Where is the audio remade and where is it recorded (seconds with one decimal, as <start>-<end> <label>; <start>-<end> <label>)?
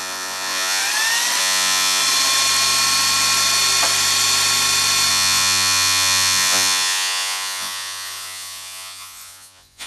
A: 0.0-0.8 remade; 0.8-1.4 recorded; 1.4-2.0 remade; 2.0-5.1 recorded; 5.1-9.9 remade